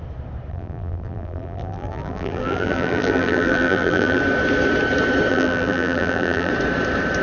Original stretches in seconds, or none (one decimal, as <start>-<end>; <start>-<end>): 0.0-0.5; 4.2-5.3; 6.5-7.2